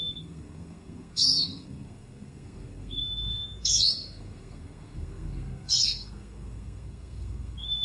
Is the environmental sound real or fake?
fake